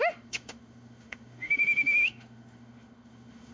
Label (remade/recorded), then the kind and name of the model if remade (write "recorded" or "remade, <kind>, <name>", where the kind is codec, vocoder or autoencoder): remade, autoencoder, DAC-VAE